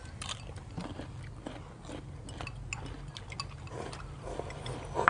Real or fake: real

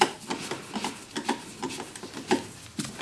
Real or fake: real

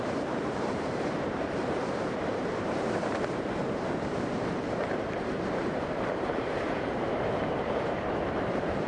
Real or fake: fake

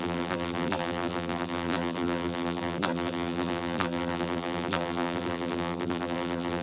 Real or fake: fake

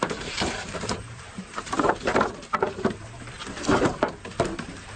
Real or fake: fake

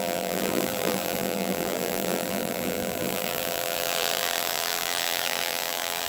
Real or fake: fake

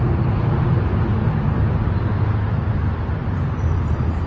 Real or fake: fake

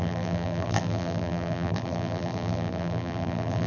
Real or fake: fake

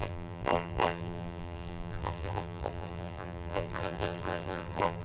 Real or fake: fake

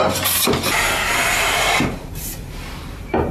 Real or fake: fake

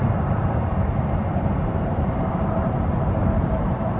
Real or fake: fake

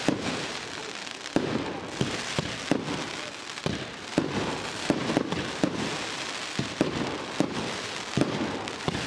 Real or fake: fake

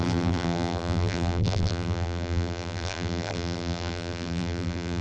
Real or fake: fake